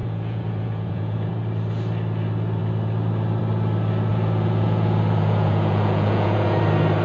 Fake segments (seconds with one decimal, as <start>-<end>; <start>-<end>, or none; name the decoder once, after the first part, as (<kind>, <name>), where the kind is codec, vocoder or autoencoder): 0.0-1.3 (vocoder, Vocos); 4.1-6.6